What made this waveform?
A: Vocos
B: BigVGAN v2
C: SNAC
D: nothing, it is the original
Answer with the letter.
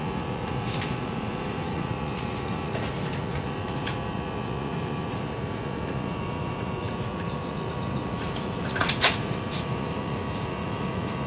A